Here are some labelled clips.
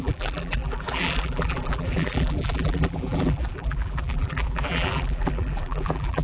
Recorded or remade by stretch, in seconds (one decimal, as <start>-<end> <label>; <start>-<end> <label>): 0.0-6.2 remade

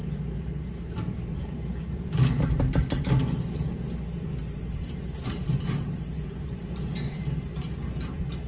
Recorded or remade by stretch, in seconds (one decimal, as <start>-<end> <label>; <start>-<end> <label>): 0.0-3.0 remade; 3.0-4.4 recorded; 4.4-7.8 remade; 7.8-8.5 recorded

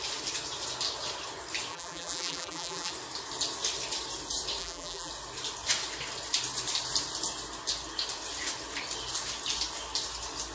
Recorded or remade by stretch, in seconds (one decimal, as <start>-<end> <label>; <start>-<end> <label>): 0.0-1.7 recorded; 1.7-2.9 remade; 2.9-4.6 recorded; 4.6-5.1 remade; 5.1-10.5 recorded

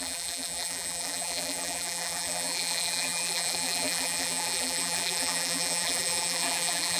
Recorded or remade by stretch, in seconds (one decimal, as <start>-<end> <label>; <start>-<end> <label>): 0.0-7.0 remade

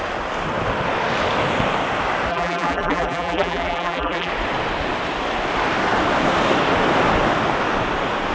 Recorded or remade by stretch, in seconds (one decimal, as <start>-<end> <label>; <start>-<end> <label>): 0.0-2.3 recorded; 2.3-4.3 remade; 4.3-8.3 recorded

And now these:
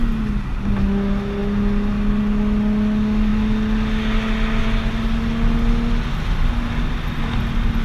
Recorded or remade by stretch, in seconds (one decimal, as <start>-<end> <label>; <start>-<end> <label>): 0.0-7.8 recorded